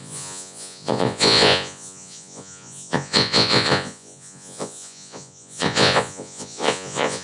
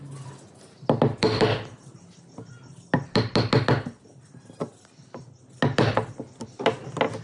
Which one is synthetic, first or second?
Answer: first